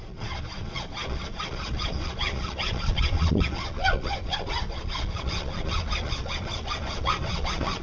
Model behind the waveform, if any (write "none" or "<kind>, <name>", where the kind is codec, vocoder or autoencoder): vocoder, Vocos